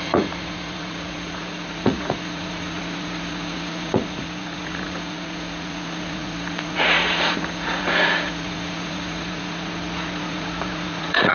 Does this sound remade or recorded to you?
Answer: remade